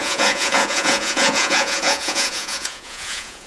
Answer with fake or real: fake